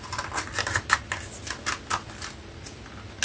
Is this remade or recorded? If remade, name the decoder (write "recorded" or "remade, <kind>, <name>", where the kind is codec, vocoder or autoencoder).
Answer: recorded